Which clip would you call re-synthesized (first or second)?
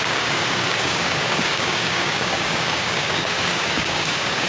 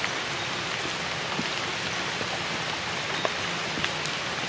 first